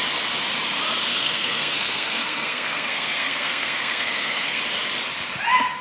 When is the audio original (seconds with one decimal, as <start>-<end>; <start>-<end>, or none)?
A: 0.0-1.1; 4.6-5.8